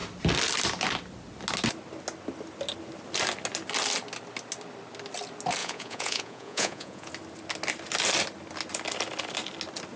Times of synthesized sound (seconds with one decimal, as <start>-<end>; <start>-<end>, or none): 5.6-7.1